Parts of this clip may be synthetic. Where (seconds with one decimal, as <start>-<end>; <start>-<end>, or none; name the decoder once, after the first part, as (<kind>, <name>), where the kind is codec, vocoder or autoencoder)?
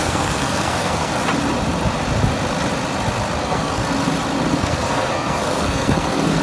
0.0-1.1 (codec, SNAC); 3.4-3.8; 4.5-6.4